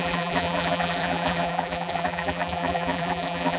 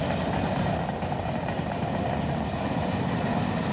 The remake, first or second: first